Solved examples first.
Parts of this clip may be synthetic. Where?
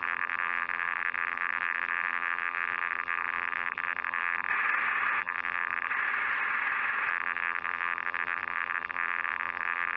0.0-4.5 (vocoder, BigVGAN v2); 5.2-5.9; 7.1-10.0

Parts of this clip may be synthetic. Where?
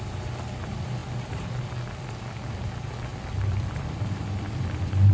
1.0-2.4 (vocoder, BigVGAN v2); 3.1-5.1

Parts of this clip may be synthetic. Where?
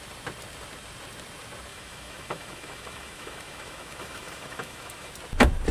1.7-5.1 (autoencoder, DAC-VAE)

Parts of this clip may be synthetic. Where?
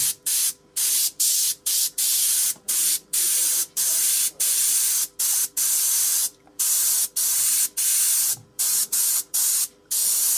0.0-4.8 (vocoder, BigVGAN v2); 6.1-6.9; 8.1-9.9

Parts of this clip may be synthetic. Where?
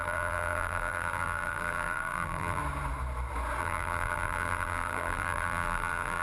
0.0-2.6 (vocoder, BigVGAN v2); 3.6-6.2